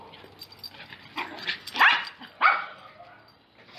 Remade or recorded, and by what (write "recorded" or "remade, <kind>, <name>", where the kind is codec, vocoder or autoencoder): recorded